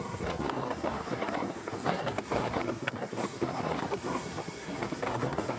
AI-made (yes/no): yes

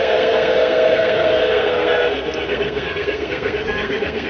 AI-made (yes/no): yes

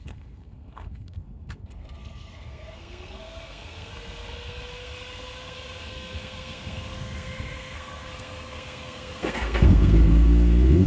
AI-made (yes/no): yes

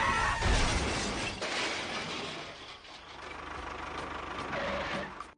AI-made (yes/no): no